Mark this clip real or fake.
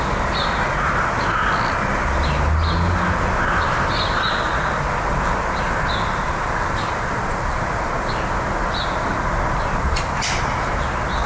real